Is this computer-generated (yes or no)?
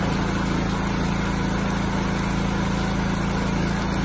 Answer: no